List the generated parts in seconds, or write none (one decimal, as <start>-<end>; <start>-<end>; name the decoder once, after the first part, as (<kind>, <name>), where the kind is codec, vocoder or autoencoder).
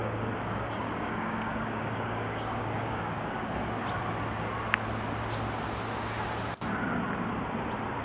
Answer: 0.0-3.8 (codec, DAC)